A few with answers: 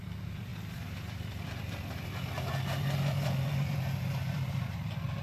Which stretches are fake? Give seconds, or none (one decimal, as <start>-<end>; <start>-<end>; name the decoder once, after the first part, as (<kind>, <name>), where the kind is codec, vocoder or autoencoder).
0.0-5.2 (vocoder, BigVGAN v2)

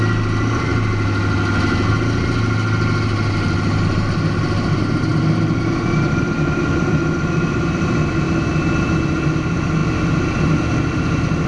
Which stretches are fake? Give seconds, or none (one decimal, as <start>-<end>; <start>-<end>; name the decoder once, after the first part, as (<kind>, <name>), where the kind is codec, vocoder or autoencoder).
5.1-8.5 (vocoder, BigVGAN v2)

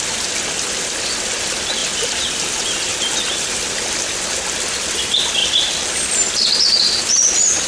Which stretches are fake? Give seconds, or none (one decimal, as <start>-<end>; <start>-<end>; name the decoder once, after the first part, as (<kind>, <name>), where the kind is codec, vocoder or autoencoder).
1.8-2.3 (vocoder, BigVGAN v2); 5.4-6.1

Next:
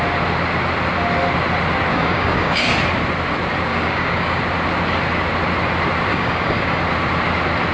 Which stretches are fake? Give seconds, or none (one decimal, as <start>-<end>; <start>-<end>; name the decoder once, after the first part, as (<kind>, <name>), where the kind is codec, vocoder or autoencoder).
1.9-2.6 (codec, DAC); 3.7-4.4; 6.1-6.8